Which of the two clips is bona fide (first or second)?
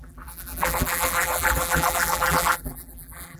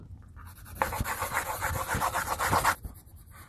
second